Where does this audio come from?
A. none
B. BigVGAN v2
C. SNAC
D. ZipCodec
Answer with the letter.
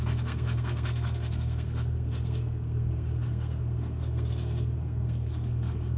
C